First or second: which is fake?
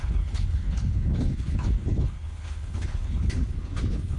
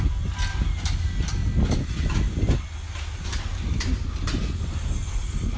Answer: first